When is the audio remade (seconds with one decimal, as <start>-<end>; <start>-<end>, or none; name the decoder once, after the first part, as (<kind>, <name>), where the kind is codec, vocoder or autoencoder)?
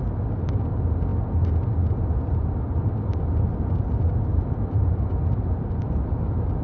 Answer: none